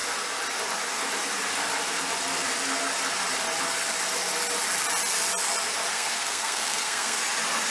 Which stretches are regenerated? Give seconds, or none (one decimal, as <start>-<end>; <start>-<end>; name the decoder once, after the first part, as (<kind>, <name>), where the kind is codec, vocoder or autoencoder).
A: 5.9-7.2 (codec, SNAC)